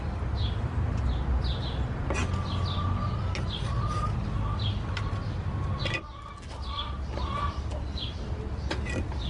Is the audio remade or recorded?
recorded